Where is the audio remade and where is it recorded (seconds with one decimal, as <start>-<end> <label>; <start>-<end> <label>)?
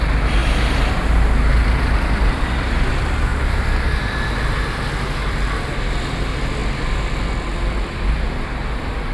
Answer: 0.0-0.4 recorded; 0.4-2.9 remade; 2.9-9.1 recorded